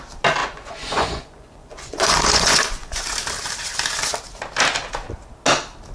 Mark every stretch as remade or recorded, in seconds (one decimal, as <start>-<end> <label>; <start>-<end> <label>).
0.0-0.4 recorded; 0.4-3.0 remade; 3.0-5.9 recorded